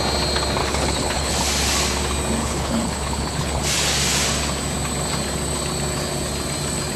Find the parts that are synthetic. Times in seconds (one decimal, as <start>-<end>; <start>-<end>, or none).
0.6-1.3; 2.4-3.6